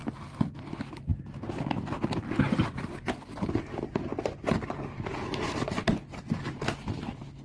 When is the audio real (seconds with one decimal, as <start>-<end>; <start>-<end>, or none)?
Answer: 0.0-7.4